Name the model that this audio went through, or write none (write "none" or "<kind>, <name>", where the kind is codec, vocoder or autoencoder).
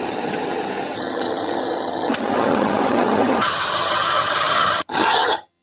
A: vocoder, HiFi-GAN